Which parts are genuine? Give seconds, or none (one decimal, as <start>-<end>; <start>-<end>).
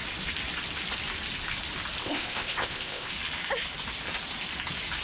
0.0-2.0; 3.1-5.0